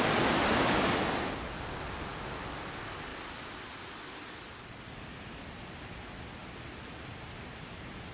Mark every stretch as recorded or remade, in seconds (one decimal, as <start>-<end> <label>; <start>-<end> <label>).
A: 0.0-8.1 recorded